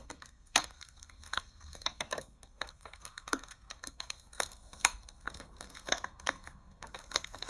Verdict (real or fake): fake